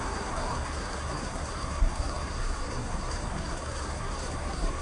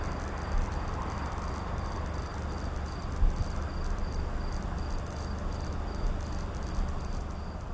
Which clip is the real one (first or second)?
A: second